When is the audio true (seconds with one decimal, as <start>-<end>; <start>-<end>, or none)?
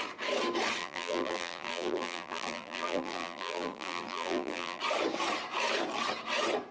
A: 0.0-0.8; 4.8-6.7